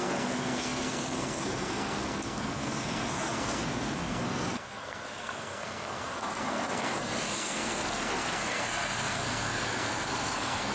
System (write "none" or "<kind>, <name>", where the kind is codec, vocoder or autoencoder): codec, SNAC